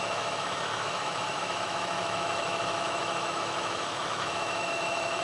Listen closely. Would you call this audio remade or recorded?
remade